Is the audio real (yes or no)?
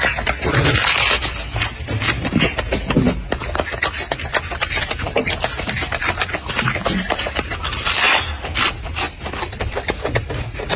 yes